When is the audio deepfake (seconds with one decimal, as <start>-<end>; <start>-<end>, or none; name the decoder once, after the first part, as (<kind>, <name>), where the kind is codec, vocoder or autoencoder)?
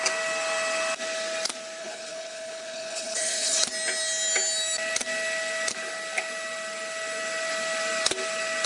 1.8-3.6 (codec, HILCodec)